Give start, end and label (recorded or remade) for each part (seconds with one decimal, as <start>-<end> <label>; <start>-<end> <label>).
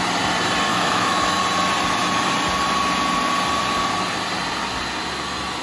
0.0-0.7 recorded; 0.7-1.4 remade; 1.4-5.6 recorded